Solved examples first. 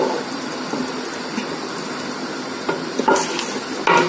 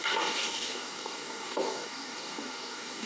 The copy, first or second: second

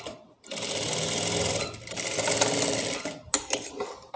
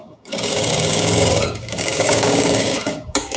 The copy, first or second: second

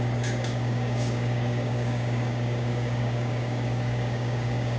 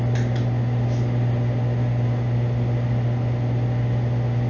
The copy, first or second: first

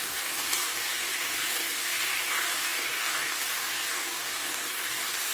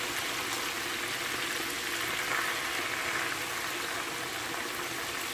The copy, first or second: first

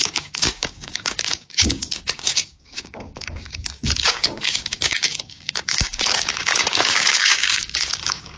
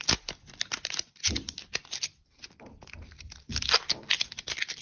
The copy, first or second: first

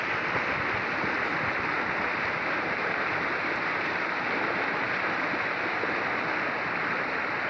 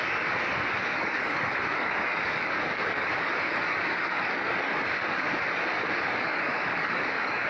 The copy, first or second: second